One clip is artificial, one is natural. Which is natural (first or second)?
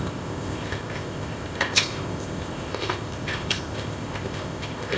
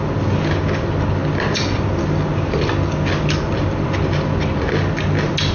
second